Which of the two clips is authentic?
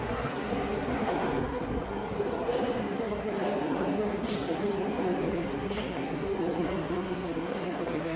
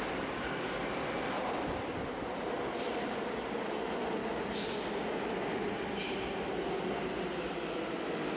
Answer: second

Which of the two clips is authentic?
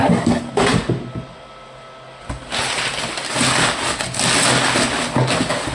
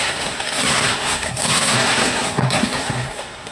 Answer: first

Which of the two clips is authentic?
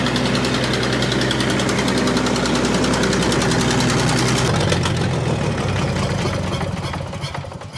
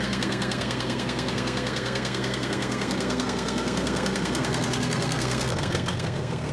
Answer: first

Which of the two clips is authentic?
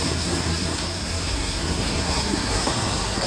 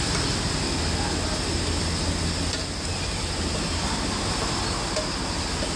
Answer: second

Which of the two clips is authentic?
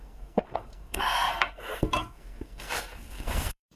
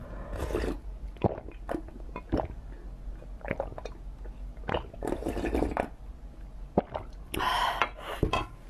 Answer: second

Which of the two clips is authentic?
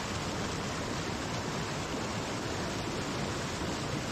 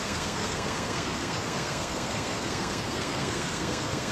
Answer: first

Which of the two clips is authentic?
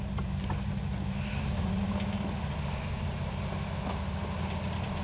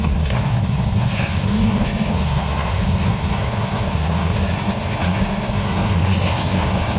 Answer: first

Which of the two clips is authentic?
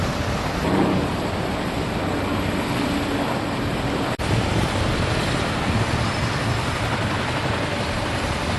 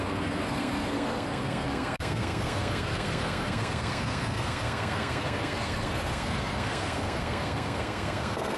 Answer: first